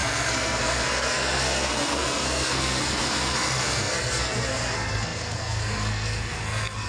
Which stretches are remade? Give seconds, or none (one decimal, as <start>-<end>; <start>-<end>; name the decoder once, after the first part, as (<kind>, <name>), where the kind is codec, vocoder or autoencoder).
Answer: 0.0-6.9 (codec, SNAC)